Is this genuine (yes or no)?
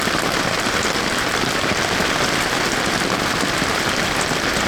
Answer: yes